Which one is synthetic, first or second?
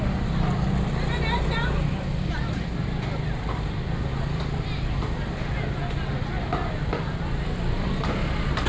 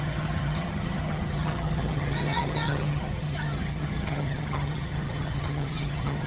second